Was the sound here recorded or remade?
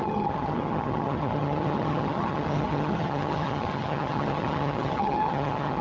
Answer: remade